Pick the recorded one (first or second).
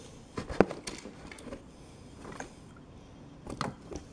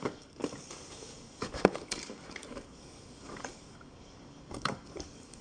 first